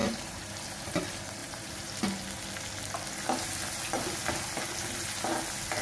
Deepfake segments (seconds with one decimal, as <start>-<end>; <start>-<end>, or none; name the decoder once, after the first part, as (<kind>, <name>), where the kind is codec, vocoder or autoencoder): 0.0-0.5 (vocoder, BigVGAN v2); 1.4-2.0